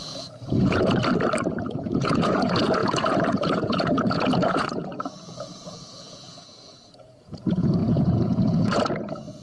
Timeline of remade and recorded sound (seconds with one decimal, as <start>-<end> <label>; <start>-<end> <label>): 0.0-1.0 remade; 1.0-1.6 recorded; 1.6-9.4 remade